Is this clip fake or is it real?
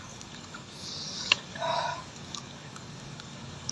fake